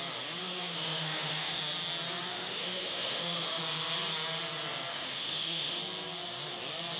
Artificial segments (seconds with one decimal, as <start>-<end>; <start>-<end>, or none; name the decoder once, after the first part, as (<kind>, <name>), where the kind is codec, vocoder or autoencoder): 0.4-1.6 (autoencoder, DAC-VAE); 2.3-3.6; 4.9-5.8